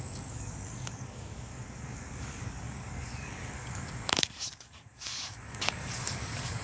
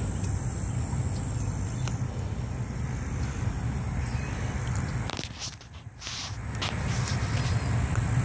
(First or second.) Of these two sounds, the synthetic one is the first